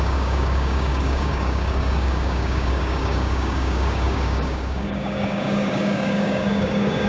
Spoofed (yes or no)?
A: yes